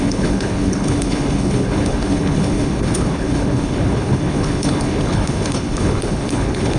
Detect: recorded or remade remade